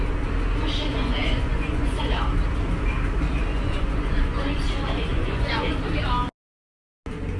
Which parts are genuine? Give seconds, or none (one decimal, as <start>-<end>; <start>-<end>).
0.0-0.9; 2.0-3.5; 4.6-5.1; 5.7-7.4